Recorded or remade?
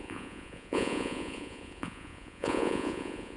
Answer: remade